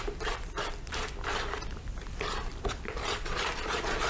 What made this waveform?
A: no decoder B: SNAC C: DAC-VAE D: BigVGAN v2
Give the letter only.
D